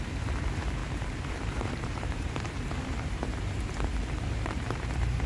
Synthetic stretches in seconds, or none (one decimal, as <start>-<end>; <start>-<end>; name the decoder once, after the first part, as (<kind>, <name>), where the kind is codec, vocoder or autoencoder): 0.0-0.8 (vocoder, BigVGAN v2); 1.3-5.3